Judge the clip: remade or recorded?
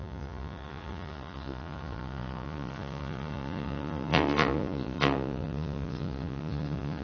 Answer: remade